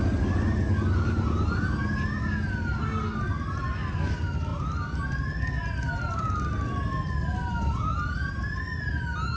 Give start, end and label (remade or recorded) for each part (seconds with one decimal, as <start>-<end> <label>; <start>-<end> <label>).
0.0-9.4 recorded